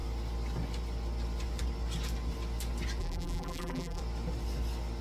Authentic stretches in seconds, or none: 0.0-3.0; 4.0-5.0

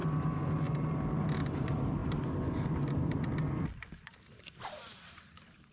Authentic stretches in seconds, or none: 0.0-0.6

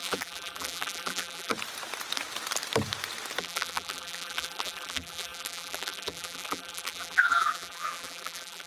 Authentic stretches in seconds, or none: 1.5-3.4

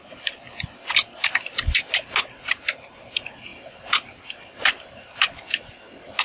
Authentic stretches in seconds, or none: 0.0-3.5

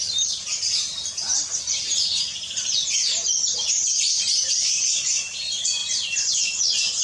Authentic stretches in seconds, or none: 1.3-2.9

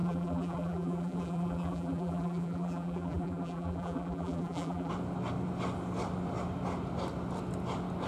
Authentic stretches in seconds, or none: 4.9-8.1